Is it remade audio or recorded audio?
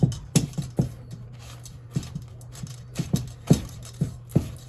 recorded